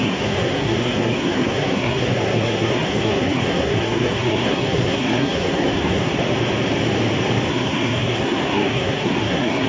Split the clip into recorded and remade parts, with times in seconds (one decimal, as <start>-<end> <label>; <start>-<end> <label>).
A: 0.0-6.2 remade; 6.2-7.5 recorded; 7.5-9.7 remade